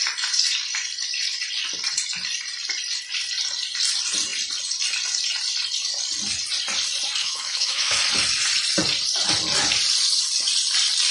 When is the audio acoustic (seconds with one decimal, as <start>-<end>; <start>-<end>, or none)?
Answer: 0.0-7.2; 8.0-11.1